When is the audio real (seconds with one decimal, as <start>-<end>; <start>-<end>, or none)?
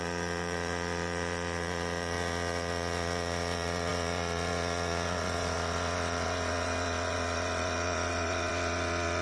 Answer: none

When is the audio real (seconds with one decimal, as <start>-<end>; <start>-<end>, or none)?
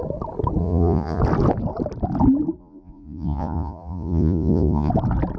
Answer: 0.0-0.6; 1.2-2.6; 4.9-5.4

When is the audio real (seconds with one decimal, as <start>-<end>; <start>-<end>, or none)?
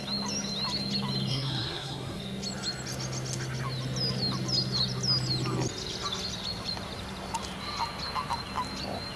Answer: 0.0-1.3; 2.2-9.2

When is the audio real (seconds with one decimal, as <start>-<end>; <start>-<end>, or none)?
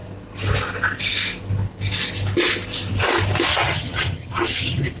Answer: 0.0-3.5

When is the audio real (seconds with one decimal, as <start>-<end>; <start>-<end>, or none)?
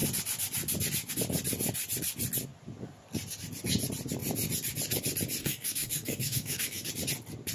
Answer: 0.0-5.4; 6.9-7.5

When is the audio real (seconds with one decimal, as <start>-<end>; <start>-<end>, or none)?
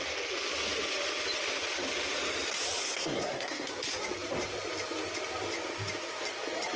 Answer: 0.0-2.8; 3.7-6.8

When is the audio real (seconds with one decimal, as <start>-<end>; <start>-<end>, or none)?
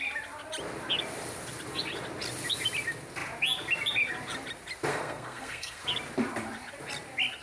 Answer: 0.0-4.9; 5.8-7.4